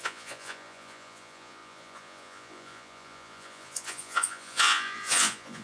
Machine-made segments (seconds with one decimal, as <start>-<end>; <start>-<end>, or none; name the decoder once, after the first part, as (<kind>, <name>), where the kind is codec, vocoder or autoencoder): 0.0-5.6 (vocoder, Vocos)